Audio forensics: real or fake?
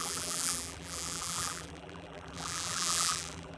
fake